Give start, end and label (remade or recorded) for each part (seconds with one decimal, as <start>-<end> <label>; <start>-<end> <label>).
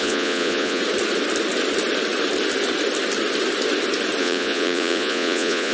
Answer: 0.0-0.8 remade; 0.8-4.2 recorded; 4.2-5.7 remade